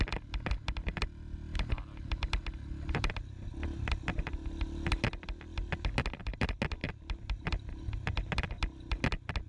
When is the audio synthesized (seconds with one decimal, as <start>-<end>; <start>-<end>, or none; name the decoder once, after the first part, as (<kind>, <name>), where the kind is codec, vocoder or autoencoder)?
none